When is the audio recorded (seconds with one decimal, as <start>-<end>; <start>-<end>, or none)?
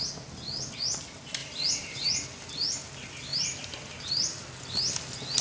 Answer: 0.0-1.4; 2.1-3.3; 4.4-5.4